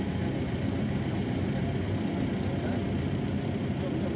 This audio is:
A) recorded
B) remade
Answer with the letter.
A